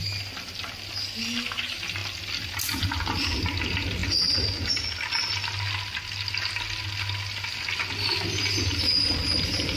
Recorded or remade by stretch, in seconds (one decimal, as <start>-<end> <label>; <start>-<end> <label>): 0.0-9.8 recorded